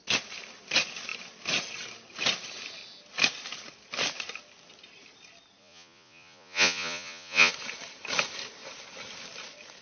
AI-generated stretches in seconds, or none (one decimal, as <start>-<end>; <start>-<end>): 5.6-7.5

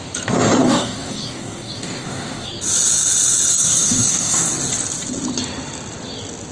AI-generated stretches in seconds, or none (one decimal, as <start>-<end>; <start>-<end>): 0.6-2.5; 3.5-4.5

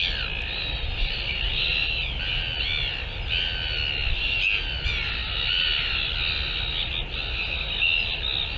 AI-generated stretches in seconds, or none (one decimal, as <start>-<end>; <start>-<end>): none